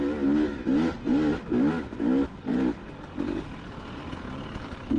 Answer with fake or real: real